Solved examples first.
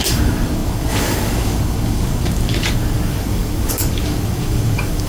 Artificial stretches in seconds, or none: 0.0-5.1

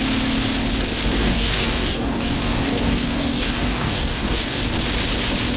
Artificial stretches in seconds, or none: 1.2-4.6

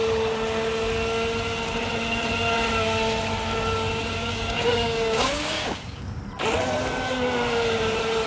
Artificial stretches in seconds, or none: 4.0-6.2

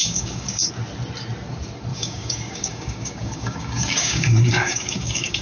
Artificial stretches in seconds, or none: 0.0-0.7; 1.9-5.4

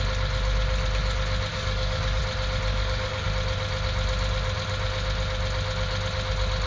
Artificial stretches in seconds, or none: 1.5-2.2; 2.7-3.3

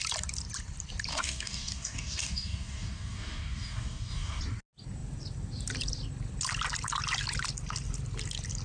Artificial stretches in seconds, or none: 1.1-4.4

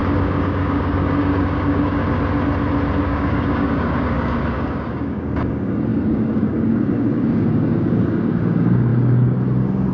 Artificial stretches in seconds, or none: 0.0-2.0; 3.0-9.9

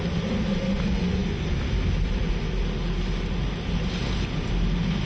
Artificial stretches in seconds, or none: none